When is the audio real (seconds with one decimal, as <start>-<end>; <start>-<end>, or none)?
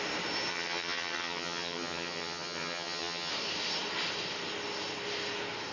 0.0-0.5; 3.3-5.7